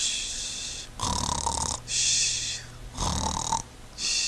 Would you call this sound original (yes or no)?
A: yes